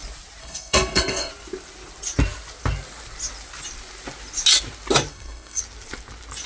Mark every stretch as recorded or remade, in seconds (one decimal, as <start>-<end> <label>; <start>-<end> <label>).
0.0-0.4 recorded; 0.4-1.3 remade; 1.3-5.1 recorded; 5.1-5.6 remade; 5.6-6.5 recorded